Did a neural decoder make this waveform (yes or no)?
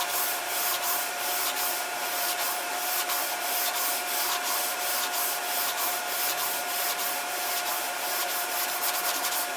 yes